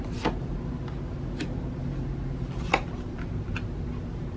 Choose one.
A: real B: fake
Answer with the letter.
A